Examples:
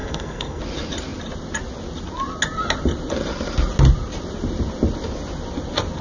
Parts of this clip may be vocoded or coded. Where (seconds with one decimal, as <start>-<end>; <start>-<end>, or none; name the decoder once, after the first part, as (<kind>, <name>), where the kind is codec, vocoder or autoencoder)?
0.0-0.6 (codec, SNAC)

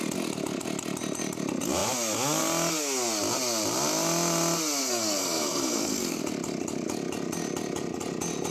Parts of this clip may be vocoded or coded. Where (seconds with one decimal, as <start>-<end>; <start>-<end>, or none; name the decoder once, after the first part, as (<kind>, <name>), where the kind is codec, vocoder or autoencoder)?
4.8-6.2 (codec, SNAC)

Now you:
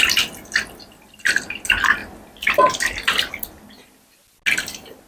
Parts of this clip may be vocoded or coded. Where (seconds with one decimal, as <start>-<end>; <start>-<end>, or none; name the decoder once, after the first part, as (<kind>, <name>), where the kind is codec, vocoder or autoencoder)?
none

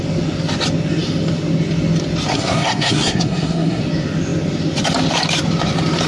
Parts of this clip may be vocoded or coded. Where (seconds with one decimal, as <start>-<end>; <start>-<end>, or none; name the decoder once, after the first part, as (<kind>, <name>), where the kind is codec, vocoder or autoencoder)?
2.3-3.8 (codec, SNAC)